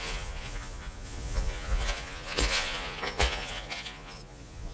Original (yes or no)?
no